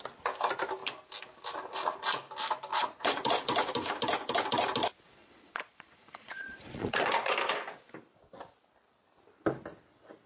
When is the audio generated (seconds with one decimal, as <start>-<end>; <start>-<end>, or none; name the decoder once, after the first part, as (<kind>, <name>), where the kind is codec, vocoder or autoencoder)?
2.7-3.4 (vocoder, Vocos); 5.2-7.4